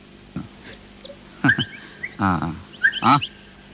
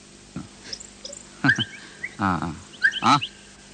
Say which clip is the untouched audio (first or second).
second